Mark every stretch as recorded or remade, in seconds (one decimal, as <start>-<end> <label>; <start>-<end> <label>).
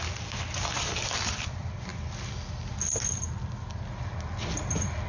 0.0-5.1 recorded